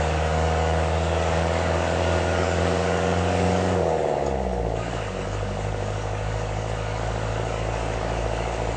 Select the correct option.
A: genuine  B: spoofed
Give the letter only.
B